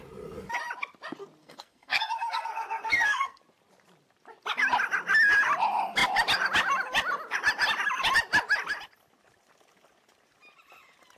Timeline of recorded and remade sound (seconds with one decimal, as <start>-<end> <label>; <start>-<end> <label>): 0.0-1.4 recorded; 1.4-3.4 remade; 3.4-11.2 recorded